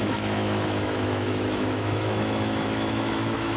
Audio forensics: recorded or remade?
remade